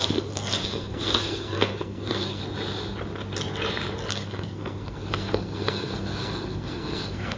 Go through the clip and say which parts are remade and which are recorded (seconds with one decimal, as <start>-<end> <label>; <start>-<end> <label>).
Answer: 0.0-2.4 remade; 2.4-4.1 recorded; 4.1-7.4 remade